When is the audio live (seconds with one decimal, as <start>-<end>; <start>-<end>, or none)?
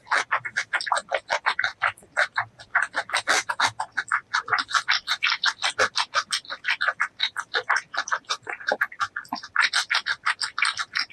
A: 0.0-1.7; 5.7-7.2; 9.9-11.1